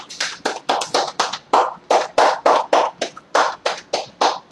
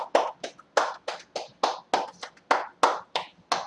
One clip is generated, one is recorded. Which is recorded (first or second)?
second